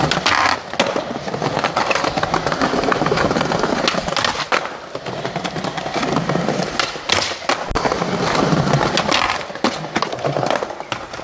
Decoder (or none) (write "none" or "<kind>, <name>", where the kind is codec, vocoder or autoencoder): none